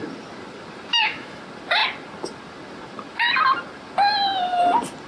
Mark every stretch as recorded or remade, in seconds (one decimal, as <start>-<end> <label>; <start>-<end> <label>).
0.0-0.9 recorded; 0.9-1.4 remade; 1.4-5.1 recorded

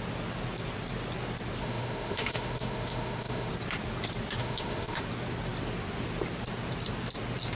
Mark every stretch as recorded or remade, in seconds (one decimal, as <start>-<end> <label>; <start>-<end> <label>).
0.0-1.6 recorded; 1.6-3.5 remade; 3.5-4.4 recorded; 4.4-5.0 remade; 5.0-7.6 recorded